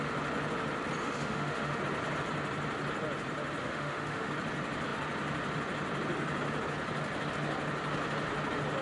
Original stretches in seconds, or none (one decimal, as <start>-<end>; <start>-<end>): 0.0-1.0; 1.8-3.6; 4.3-8.8